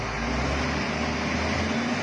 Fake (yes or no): no